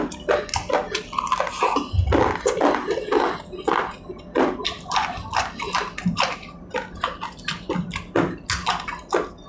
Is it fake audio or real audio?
real